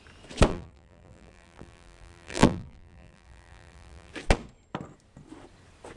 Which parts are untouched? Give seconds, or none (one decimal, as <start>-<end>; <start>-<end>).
0.0-0.5; 4.1-6.0